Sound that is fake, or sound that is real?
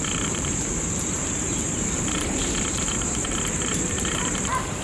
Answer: fake